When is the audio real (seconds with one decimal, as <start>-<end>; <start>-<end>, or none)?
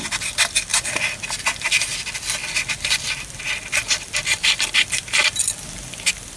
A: 0.0-6.4